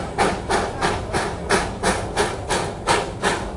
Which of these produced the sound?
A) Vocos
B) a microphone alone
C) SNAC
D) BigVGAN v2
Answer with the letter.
B